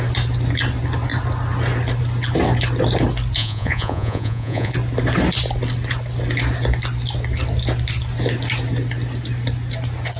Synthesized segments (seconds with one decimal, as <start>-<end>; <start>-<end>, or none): 3.4-4.7